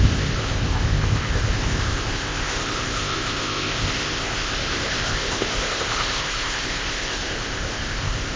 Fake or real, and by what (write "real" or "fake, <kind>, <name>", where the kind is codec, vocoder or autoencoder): fake, codec, ZipCodec